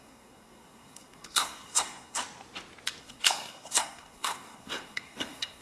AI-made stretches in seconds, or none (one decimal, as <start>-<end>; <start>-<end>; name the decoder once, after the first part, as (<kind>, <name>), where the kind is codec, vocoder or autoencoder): 0.0-2.2 (codec, SNAC); 3.0-5.6